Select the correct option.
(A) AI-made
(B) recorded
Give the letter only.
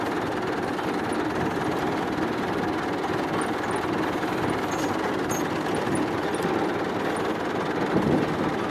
B